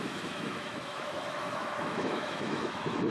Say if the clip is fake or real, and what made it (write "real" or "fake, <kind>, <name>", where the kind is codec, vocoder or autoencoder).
fake, autoencoder, DAC-VAE